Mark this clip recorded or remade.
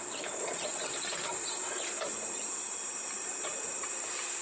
remade